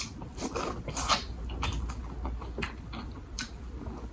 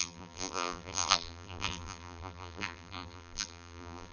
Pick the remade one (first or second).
second